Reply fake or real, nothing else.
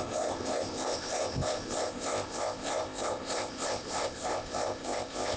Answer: fake